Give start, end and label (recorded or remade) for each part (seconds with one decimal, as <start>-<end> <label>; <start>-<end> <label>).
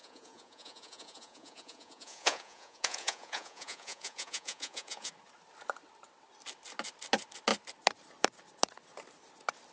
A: 0.0-5.1 remade; 5.1-9.7 recorded